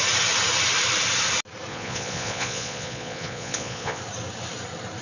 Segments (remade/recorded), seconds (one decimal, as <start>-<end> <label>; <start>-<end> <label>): 0.0-1.7 recorded; 1.7-4.0 remade; 4.0-5.0 recorded